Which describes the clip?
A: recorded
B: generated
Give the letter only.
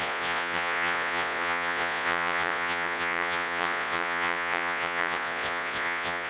B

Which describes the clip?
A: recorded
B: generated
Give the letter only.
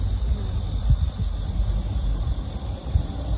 A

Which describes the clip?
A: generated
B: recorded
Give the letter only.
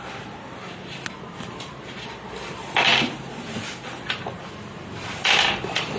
B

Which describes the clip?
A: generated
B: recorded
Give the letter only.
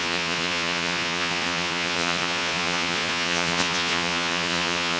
A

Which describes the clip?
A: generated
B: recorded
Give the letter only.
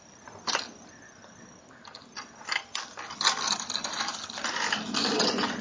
B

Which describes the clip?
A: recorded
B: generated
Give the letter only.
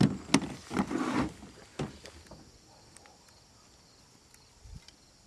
A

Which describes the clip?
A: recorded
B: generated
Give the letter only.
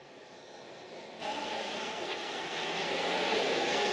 B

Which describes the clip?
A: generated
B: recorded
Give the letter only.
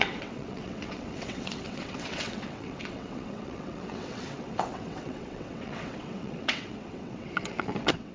A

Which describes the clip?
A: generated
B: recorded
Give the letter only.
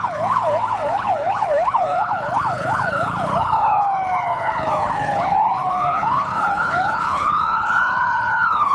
A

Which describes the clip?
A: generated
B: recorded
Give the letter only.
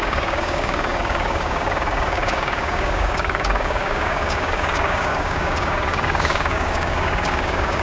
A